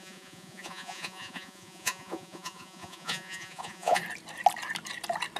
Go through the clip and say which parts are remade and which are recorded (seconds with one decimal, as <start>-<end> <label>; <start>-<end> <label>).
0.0-4.0 remade; 4.0-5.4 recorded